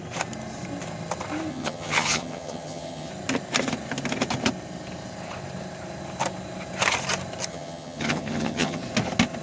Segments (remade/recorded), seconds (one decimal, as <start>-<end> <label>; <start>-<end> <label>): 0.0-1.5 recorded; 1.5-3.1 remade; 3.1-7.5 recorded; 7.5-8.8 remade; 8.8-9.4 recorded